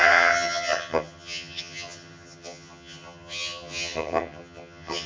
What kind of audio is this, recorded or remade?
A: remade